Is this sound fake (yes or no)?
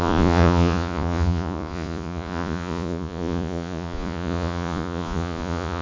yes